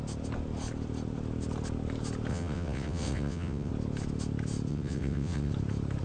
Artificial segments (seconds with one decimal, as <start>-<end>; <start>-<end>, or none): 2.3-3.7; 4.7-5.5